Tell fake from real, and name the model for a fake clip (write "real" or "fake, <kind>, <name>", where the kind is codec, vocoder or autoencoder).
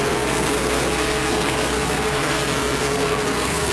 fake, codec, SNAC